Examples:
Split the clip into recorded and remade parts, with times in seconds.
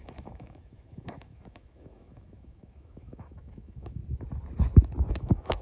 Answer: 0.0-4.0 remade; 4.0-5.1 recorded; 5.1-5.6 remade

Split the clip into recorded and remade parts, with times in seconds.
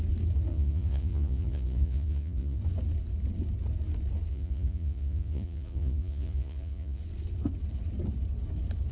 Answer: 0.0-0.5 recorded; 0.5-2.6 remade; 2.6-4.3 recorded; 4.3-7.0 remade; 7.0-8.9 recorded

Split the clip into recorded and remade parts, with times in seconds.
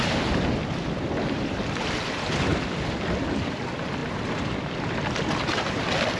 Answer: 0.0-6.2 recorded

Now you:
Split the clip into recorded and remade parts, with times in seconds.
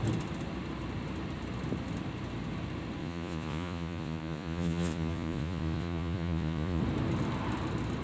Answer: 0.0-3.0 recorded; 3.0-6.8 remade; 6.8-8.0 recorded